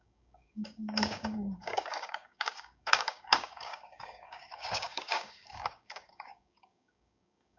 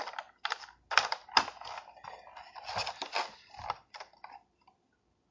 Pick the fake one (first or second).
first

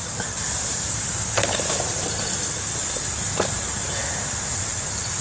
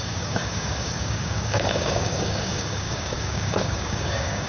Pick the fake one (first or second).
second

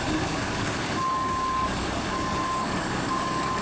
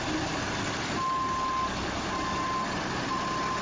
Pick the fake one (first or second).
first